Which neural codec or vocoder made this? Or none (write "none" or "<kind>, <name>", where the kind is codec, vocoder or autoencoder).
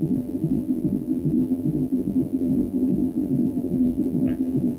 vocoder, BigVGAN v2